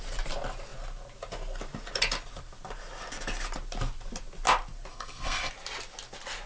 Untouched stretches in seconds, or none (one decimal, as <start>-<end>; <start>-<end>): 0.0-4.9; 5.5-6.5